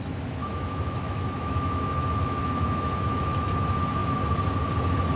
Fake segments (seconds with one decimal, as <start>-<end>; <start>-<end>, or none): 0.4-3.5